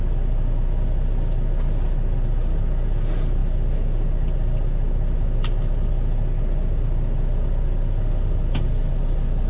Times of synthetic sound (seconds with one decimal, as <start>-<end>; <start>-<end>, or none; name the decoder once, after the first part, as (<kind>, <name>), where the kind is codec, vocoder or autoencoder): none